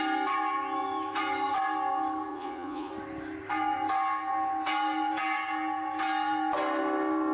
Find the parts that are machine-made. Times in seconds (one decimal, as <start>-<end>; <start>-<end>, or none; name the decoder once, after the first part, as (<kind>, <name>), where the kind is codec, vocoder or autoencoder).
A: 2.3-2.9 (vocoder, Vocos)